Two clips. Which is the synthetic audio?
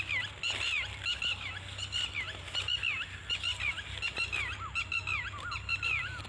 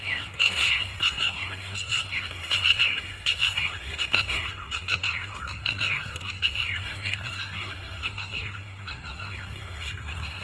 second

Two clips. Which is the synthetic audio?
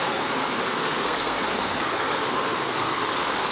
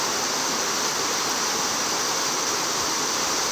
first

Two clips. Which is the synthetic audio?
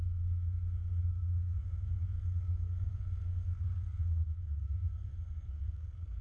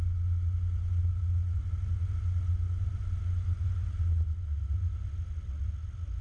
first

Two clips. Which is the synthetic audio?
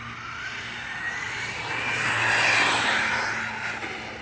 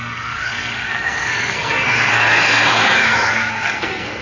second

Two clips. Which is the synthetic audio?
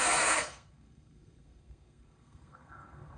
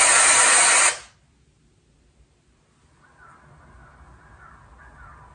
first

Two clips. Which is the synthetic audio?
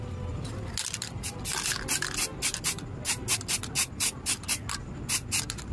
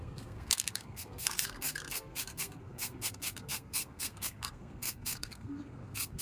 second